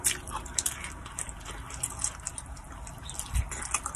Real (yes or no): yes